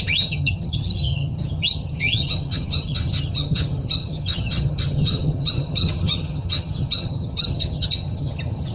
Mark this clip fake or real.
fake